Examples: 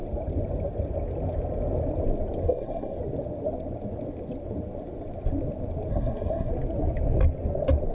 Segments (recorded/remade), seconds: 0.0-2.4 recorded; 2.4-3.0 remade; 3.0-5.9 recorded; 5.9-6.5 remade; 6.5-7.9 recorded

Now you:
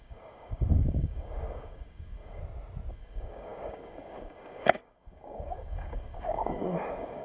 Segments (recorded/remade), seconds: 0.0-2.4 remade; 2.4-2.9 recorded; 2.9-7.2 remade

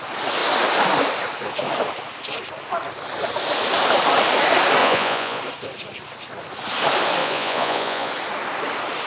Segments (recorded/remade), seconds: 0.0-4.8 recorded; 4.8-5.4 remade; 5.4-7.2 recorded; 7.2-8.1 remade; 8.1-9.1 recorded